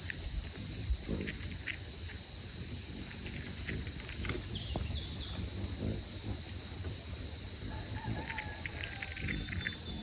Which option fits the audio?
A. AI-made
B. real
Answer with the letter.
B